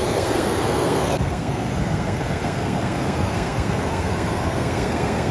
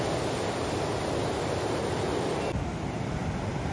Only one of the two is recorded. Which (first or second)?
second